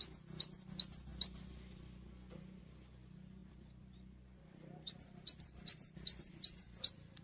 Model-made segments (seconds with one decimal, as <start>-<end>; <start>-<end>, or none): 3.4-6.3